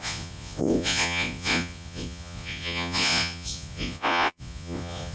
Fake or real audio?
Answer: fake